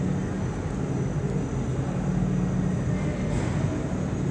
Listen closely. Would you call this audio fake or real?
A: real